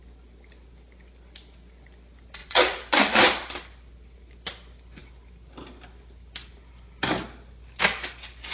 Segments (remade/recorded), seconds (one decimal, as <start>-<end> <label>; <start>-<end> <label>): 0.0-2.4 recorded; 2.4-3.2 remade; 3.2-8.5 recorded

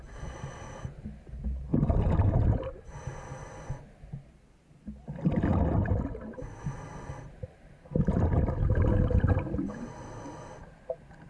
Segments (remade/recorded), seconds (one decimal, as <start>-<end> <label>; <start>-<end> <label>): 0.0-11.3 recorded

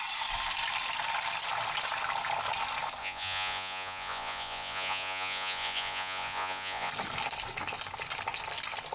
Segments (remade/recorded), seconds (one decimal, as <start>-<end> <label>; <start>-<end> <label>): 0.0-3.0 recorded; 3.0-6.9 remade; 6.9-8.9 recorded